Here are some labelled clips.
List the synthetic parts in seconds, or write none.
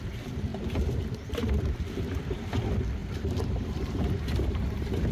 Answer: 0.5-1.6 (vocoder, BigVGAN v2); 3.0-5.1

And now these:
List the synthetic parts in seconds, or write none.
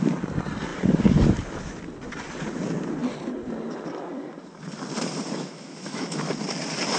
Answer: 5.4-6.3 (autoencoder, DAC-VAE)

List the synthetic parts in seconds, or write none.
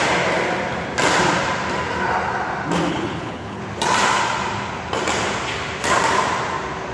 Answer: 2.9-3.6 (codec, HILCodec)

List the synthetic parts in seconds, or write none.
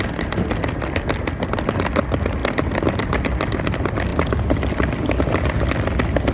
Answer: none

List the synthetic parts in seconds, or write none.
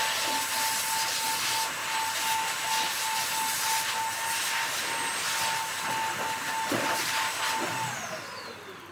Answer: none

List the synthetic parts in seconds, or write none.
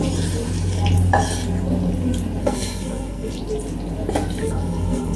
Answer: 2.4-3.4 (codec, SNAC); 4.4-5.2